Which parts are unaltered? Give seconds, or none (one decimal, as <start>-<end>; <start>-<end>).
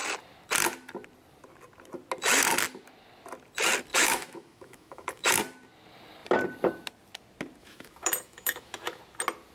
0.0-3.9; 5.3-7.6; 9.0-9.5